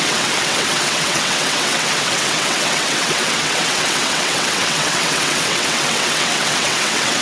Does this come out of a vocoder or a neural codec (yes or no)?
yes